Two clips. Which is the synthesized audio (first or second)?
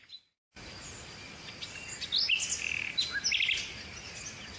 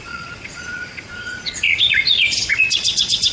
second